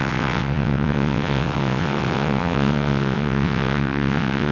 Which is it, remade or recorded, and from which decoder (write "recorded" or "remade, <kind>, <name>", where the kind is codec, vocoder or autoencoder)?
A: remade, vocoder, WaveNeXt